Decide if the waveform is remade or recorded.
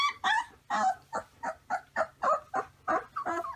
recorded